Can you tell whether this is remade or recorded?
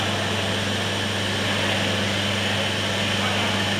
recorded